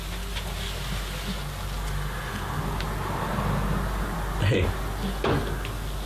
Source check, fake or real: real